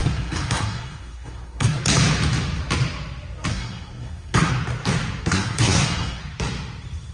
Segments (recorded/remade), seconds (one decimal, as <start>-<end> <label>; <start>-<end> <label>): 0.0-1.8 remade; 1.8-3.5 recorded; 3.5-4.5 remade; 4.5-5.2 recorded; 5.2-6.2 remade; 6.2-7.1 recorded

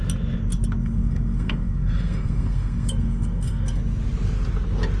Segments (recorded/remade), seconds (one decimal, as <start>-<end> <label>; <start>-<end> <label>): 0.0-0.8 recorded; 0.8-3.8 remade; 3.8-5.0 recorded